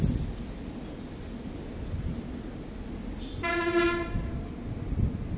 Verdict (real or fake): real